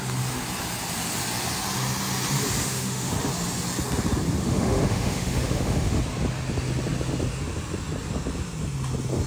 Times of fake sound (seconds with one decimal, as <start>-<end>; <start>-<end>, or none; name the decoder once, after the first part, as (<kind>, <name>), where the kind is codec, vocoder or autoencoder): 2.6-3.1 (autoencoder, DAC-VAE); 4.4-6.0